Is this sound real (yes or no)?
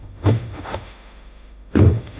no